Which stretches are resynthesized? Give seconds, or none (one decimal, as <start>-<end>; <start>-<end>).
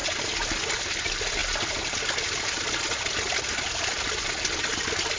none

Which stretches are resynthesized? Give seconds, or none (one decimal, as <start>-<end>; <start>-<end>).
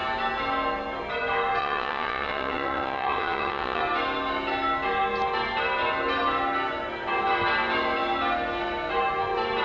1.6-3.8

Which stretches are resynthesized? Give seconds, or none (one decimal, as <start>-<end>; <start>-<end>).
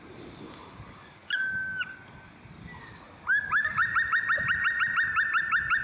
none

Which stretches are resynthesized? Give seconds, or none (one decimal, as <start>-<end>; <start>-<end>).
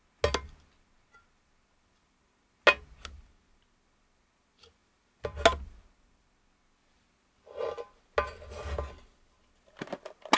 none